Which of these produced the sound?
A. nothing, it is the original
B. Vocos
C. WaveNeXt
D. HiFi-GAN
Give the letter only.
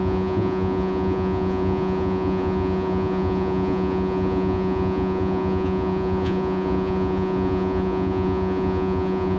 B